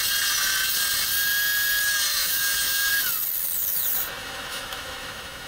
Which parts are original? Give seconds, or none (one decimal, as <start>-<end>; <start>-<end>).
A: 0.0-2.1; 2.9-4.2